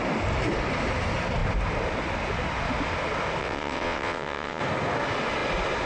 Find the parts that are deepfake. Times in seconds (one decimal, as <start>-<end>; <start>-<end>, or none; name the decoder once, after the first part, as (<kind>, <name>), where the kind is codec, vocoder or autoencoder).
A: 3.4-4.6 (vocoder, WaveNeXt)